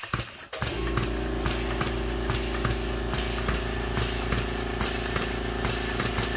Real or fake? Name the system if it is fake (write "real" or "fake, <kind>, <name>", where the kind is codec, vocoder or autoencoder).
real